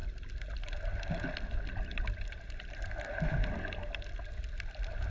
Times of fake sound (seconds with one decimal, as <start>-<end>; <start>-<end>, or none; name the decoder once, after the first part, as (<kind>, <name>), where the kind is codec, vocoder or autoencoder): none